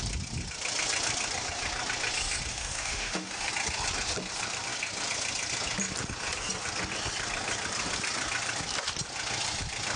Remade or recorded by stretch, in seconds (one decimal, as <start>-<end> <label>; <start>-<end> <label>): 0.0-2.5 recorded; 2.5-3.5 remade; 3.5-10.0 recorded